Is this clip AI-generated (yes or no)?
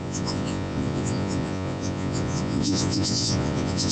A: yes